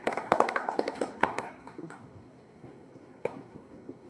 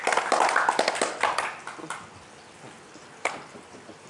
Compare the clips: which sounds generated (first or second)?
first